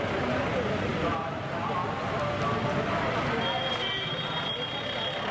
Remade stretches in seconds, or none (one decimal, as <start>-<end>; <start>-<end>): none